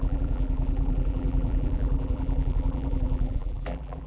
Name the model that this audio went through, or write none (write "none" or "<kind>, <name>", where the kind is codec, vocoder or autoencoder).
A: vocoder, BigVGAN v2